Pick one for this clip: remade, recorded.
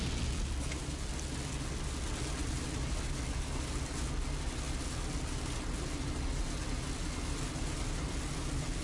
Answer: recorded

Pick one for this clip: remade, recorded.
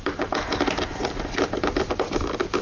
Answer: remade